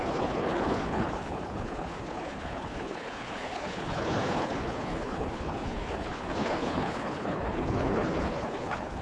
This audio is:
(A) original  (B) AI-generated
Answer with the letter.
B